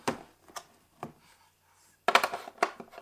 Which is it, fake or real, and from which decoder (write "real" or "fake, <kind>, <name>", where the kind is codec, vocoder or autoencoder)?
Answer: real